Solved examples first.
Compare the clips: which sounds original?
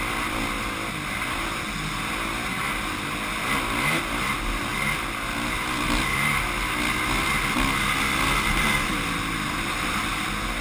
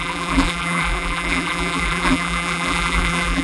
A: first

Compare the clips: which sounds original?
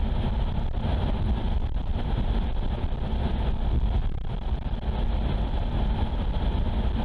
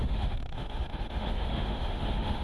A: first